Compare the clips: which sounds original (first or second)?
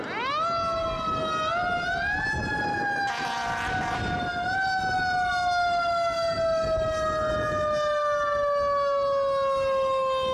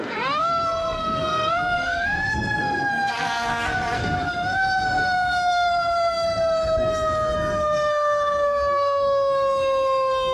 first